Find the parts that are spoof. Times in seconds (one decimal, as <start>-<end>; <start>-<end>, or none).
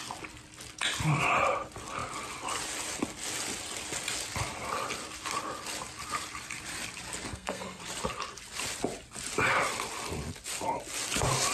7.3-7.8